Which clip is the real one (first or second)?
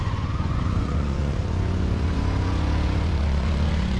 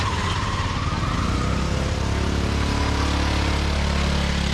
second